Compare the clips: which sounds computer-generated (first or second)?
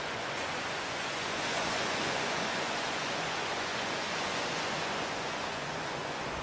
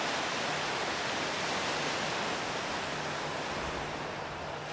first